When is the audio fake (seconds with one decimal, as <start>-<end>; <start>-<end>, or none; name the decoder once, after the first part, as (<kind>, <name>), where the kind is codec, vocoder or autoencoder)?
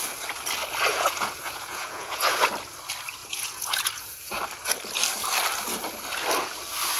0.9-2.5 (vocoder, Vocos); 3.2-4.4